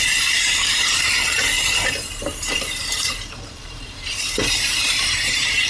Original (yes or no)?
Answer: no